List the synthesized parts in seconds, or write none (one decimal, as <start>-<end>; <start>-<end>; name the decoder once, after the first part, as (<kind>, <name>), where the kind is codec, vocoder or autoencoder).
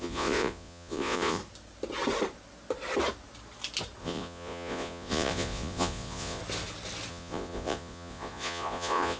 0.0-1.4 (vocoder, Vocos); 4.0-6.4; 7.1-9.2